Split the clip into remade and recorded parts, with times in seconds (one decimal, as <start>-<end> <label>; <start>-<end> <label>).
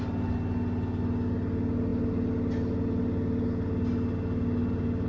0.0-5.1 recorded